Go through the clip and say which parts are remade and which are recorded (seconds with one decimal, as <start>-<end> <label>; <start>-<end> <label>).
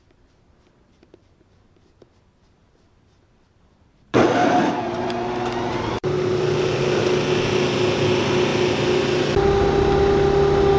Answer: 0.0-2.6 recorded; 2.6-6.8 remade; 6.8-10.8 recorded